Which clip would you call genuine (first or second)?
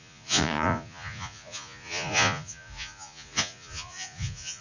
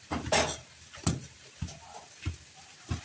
second